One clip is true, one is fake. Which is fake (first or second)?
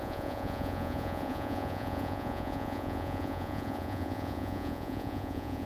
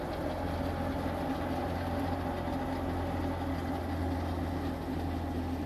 first